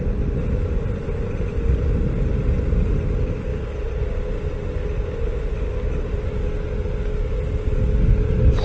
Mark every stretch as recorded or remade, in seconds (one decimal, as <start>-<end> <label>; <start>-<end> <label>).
0.0-8.6 recorded